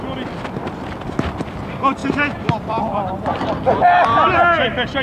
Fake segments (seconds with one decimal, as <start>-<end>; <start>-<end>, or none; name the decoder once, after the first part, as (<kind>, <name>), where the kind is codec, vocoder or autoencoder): none